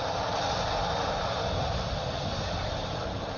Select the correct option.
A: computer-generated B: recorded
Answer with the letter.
B